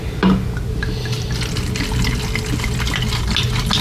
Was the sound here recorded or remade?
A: recorded